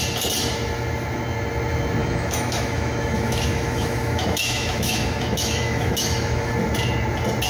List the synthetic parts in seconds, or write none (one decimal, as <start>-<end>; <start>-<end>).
2.0-6.5